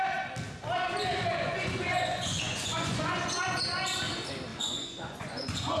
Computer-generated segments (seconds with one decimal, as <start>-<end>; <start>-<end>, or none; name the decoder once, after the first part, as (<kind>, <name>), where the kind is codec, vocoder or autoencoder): 1.3-3.6 (vocoder, Vocos); 4.5-5.8